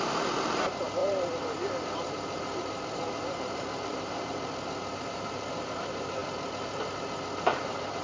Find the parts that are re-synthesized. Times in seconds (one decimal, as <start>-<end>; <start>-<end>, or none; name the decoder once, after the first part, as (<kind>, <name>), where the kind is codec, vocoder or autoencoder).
0.0-8.0 (vocoder, BigVGAN v2)